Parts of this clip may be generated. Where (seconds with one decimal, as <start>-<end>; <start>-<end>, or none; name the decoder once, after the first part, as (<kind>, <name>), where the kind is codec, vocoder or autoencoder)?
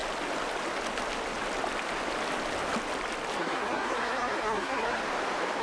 3.4-5.0 (codec, SNAC)